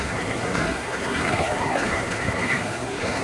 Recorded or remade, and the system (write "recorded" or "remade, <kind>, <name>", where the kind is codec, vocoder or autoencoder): remade, codec, SNAC